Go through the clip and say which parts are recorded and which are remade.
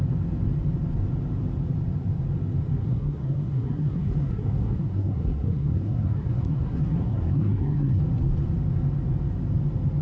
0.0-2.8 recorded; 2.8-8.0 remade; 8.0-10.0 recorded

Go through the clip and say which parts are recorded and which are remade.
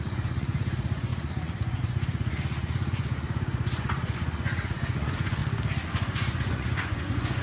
0.0-5.4 remade; 5.4-5.9 recorded; 5.9-7.4 remade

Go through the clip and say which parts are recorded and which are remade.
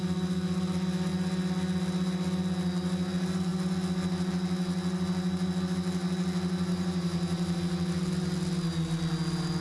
0.0-6.7 recorded; 6.7-7.6 remade; 7.6-9.6 recorded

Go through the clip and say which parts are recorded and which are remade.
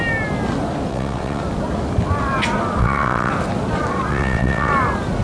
0.0-0.9 recorded; 0.9-1.4 remade; 1.4-2.8 recorded; 2.8-3.3 remade; 3.3-4.1 recorded; 4.1-4.7 remade; 4.7-5.2 recorded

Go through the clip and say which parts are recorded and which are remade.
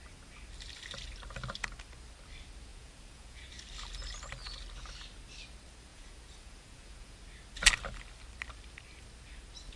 0.0-2.7 recorded; 2.7-3.5 remade; 3.5-5.9 recorded; 5.9-7.2 remade; 7.2-9.8 recorded